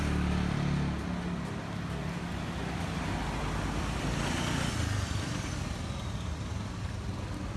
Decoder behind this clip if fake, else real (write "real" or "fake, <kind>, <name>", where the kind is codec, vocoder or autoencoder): real